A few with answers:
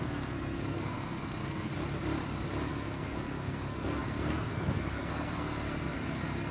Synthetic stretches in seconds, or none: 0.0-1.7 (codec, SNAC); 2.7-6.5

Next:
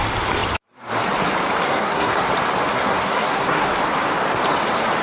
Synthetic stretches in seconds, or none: 1.6-2.3 (codec, SNAC); 2.7-3.7

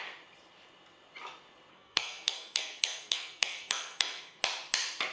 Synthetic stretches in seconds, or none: 1.7-4.4 (codec, SNAC)

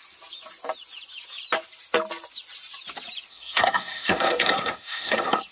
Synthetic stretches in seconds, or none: 3.3-5.5 (codec, SNAC)

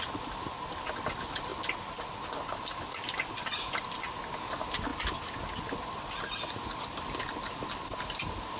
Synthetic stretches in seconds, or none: none

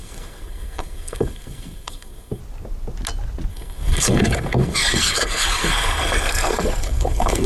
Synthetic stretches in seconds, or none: 0.0-2.4 (codec, SNAC); 3.5-7.5